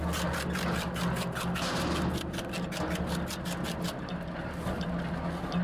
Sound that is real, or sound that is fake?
real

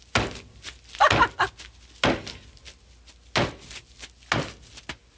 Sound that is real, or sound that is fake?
real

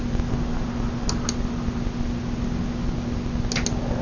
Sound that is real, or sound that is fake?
real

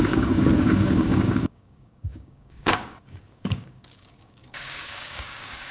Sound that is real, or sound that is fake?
fake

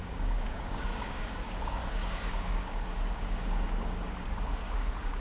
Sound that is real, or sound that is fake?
fake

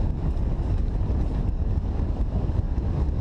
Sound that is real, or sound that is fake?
fake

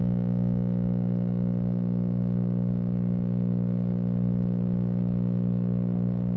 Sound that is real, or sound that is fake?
fake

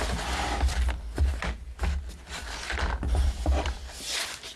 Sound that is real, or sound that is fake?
real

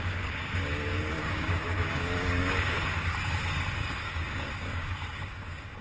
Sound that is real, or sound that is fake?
fake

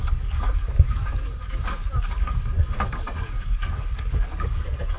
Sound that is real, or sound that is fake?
fake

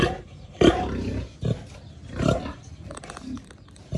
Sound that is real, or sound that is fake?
real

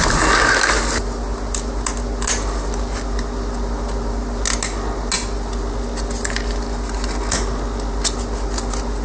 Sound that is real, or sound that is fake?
real